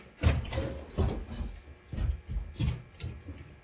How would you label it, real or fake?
real